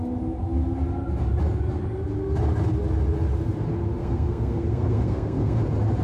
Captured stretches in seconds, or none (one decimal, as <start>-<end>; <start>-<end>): 0.0-4.0; 5.6-6.0